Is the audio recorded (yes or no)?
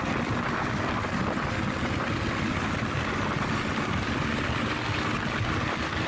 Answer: yes